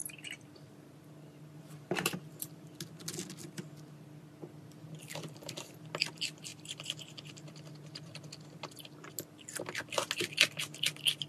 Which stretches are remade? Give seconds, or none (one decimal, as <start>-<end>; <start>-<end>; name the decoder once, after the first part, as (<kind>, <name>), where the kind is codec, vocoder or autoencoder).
0.0-2.3 (vocoder, BigVGAN v2); 6.5-8.2